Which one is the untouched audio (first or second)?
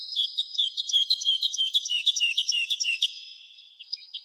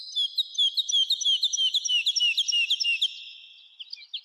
second